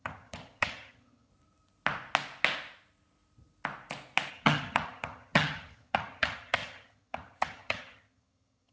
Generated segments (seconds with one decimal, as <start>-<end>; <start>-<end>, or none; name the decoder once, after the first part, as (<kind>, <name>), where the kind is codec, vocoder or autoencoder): 0.0-1.3 (vocoder, HiFi-GAN); 4.3-8.7